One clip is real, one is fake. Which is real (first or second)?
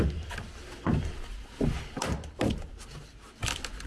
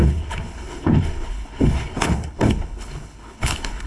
first